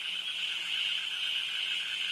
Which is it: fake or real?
fake